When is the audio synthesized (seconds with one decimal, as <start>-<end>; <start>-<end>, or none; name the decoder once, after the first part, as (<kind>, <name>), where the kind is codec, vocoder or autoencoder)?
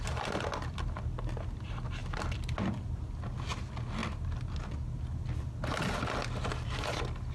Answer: none